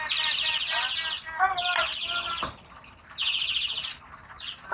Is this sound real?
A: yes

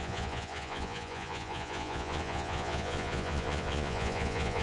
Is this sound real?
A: no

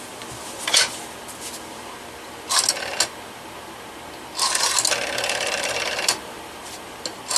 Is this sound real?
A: yes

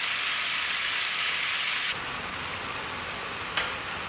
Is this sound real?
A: yes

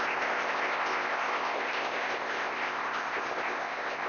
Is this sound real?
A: no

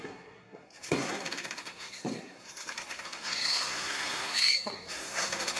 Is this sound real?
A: no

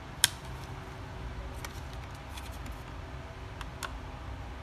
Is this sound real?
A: yes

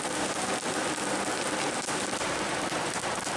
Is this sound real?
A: yes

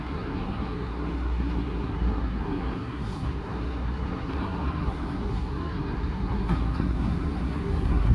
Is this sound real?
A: no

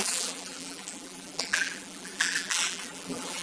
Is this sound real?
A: no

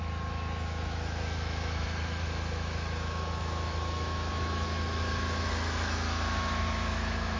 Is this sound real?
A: no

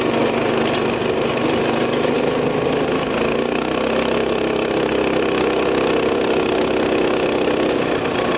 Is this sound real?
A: yes